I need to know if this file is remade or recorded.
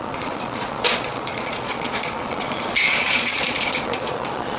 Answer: remade